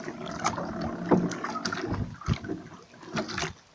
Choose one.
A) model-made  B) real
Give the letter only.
B